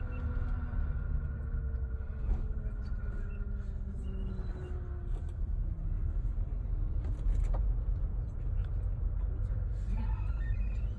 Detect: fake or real real